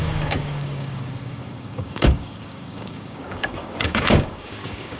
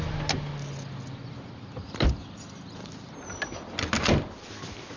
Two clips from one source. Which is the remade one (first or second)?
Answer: first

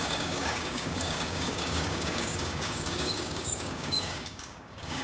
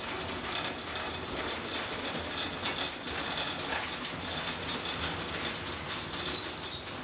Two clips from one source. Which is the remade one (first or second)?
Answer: first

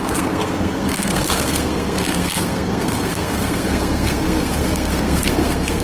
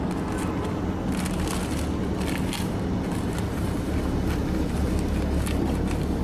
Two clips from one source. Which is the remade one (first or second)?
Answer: first